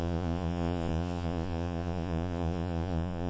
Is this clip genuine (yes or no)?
no